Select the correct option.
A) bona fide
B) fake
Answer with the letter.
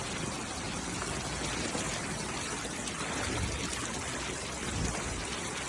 A